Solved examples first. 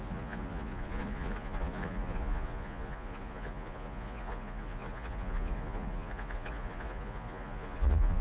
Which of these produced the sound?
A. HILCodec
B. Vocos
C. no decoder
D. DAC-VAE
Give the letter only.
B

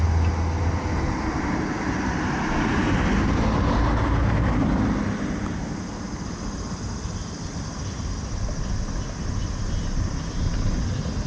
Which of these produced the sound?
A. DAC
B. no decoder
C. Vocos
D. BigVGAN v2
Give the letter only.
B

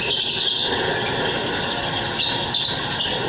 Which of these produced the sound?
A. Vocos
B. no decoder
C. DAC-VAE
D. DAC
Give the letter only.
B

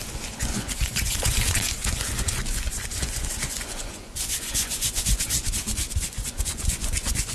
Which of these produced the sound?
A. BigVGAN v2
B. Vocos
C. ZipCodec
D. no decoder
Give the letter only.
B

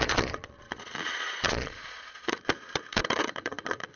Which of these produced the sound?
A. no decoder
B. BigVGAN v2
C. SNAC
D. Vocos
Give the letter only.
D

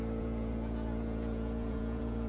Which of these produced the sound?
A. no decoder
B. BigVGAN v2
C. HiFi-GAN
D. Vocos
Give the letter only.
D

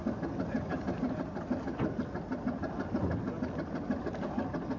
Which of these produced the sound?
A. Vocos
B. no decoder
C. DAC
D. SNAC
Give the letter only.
B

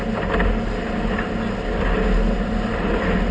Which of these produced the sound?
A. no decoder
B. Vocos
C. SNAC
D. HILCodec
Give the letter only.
A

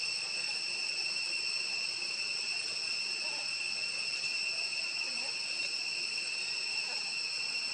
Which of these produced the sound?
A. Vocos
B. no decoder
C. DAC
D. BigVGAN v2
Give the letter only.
B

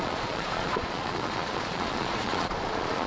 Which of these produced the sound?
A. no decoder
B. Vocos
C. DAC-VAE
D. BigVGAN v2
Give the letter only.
B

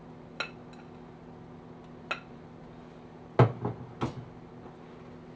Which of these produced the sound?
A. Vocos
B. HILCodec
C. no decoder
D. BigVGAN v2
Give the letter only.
C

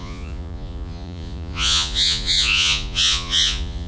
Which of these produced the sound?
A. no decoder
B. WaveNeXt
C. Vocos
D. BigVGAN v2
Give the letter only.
C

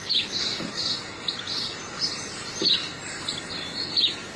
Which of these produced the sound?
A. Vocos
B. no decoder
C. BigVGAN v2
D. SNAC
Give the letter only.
B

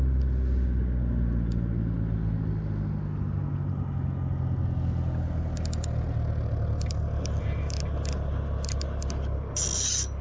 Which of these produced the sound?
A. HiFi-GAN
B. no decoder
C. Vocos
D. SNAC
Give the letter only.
B